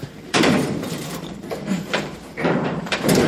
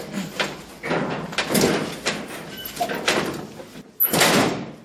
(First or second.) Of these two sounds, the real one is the second